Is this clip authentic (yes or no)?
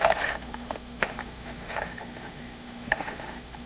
no